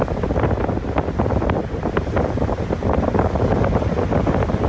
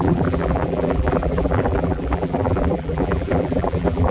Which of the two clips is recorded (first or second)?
first